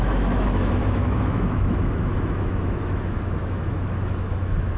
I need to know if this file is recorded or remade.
remade